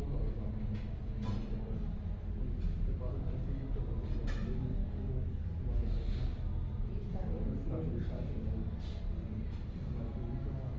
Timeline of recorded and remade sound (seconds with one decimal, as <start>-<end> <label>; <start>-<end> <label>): 0.0-4.7 recorded; 4.7-5.6 remade; 5.6-10.8 recorded